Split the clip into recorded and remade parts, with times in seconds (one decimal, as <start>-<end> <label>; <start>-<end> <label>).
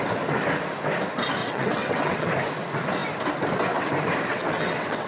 0.0-1.4 recorded; 1.4-2.3 remade; 2.3-4.3 recorded; 4.3-5.1 remade